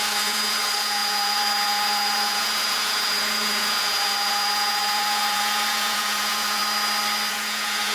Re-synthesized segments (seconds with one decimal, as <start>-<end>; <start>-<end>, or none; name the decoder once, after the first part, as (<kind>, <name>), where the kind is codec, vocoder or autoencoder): 0.0-6.6 (vocoder, Vocos); 7.3-7.9